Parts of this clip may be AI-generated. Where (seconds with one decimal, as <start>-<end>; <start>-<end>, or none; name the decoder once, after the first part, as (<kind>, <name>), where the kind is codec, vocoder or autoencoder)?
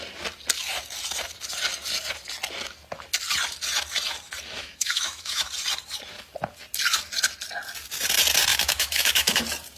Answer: 4.6-5.5 (autoencoder, DAC-VAE); 8.5-9.4